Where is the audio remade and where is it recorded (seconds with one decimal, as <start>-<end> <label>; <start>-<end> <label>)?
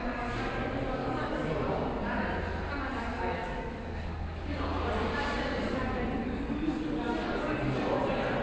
0.0-1.0 recorded; 1.0-1.5 remade; 1.5-3.1 recorded; 3.1-4.7 remade; 4.7-6.2 recorded; 6.2-7.6 remade; 7.6-8.4 recorded